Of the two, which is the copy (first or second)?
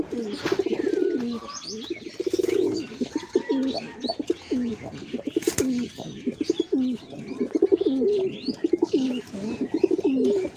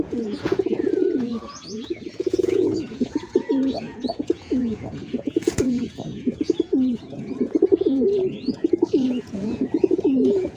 second